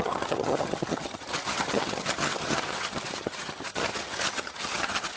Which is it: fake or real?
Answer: fake